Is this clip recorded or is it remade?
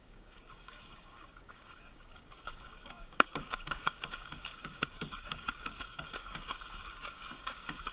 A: remade